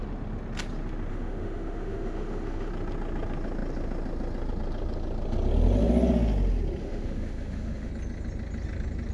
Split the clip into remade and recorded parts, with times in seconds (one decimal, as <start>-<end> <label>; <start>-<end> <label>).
0.0-1.1 recorded; 1.1-2.7 remade; 2.7-6.8 recorded; 6.8-7.9 remade; 7.9-9.1 recorded